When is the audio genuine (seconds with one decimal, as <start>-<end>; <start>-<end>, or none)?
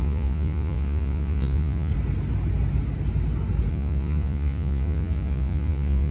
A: 1.9-3.7